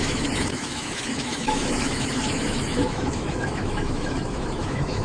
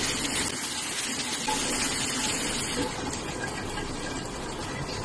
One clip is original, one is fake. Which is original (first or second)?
second